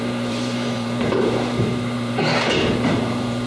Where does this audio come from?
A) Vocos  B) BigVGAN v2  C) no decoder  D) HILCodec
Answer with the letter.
B